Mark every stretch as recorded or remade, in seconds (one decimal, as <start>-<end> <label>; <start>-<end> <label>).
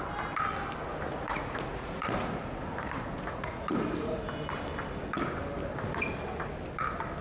0.0-1.1 recorded; 1.1-4.2 remade; 4.2-7.2 recorded